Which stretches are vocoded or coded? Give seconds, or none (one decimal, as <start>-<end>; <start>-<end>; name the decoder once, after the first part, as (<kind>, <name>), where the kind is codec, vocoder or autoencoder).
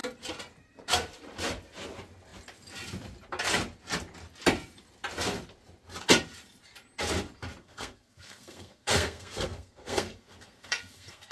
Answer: 7.6-11.3 (codec, SNAC)